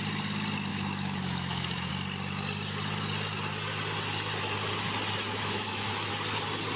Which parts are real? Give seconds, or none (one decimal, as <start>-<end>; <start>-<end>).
0.0-0.7; 1.9-5.3; 6.1-6.8